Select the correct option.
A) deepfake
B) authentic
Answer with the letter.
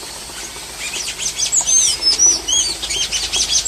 B